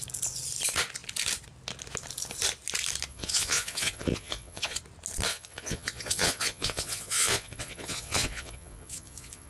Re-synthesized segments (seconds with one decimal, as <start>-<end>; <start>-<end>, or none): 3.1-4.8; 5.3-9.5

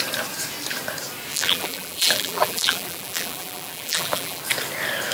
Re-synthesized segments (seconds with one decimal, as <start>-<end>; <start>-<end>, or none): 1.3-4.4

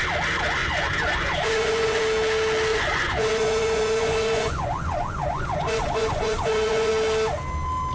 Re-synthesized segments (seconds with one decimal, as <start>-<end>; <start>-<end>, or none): 0.6-2.0; 2.7-6.9